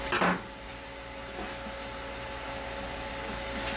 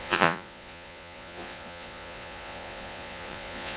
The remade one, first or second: second